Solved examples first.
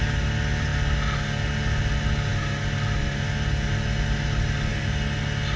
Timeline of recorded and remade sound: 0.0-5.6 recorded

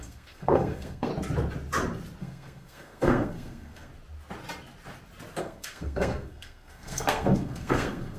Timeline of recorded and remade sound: 0.0-1.1 remade; 1.1-2.2 recorded; 2.2-3.9 remade; 3.9-5.4 recorded; 5.4-8.2 remade

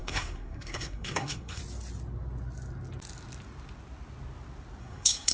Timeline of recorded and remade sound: 0.0-1.6 remade; 1.6-4.8 recorded; 4.8-5.3 remade

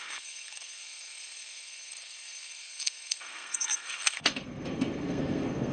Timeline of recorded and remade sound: 0.0-5.7 remade

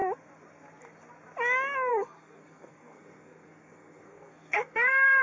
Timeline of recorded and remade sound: 0.0-1.9 recorded; 1.9-5.2 remade

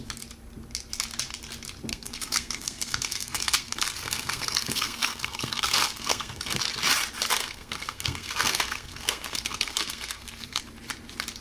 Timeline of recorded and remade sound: 0.0-1.9 recorded; 1.9-6.6 remade; 6.6-7.4 recorded; 7.4-10.6 remade; 10.6-11.4 recorded

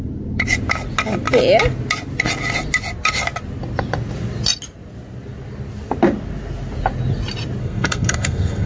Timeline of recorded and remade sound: 0.0-7.6 recorded; 7.6-8.7 remade